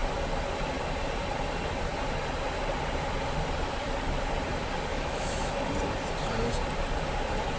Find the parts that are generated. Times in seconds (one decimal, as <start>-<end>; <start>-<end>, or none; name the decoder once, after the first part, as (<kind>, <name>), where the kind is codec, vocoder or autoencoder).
4.9-5.7 (autoencoder, DAC-VAE)